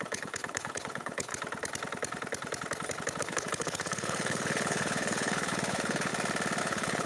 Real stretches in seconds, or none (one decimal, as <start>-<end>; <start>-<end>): 1.3-3.2; 6.1-6.6